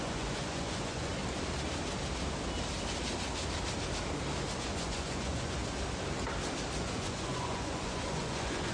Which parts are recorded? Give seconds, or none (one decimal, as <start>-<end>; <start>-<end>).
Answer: 1.2-4.6; 5.6-6.8